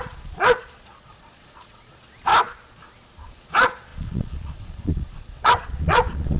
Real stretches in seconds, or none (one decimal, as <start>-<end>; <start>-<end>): 2.3-3.3